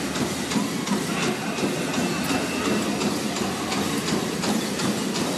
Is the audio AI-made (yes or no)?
no